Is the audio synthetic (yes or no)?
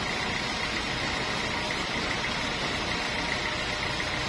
no